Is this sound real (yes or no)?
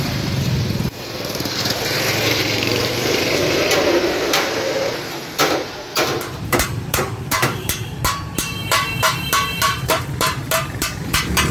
no